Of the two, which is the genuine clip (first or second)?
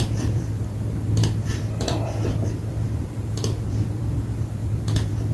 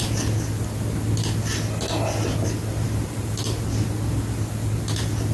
second